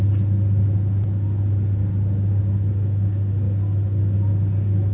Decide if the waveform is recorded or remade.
recorded